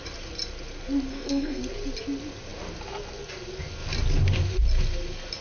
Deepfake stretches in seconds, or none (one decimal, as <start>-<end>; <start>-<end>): 1.1-1.6